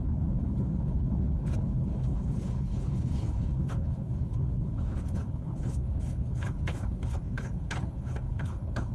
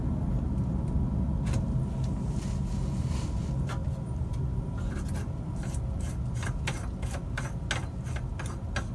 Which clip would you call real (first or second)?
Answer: second